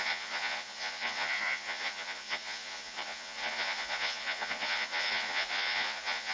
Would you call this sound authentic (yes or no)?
no